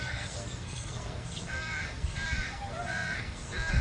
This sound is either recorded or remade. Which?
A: remade